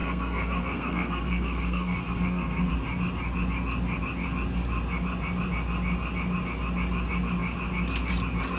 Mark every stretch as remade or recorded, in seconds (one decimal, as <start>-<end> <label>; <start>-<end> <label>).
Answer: 0.0-2.7 remade; 2.7-8.6 recorded